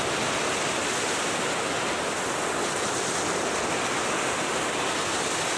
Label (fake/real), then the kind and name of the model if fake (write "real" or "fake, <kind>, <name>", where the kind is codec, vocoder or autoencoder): real